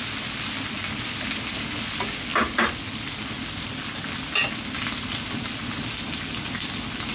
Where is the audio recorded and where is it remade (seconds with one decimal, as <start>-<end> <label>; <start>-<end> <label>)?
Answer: 0.0-7.1 recorded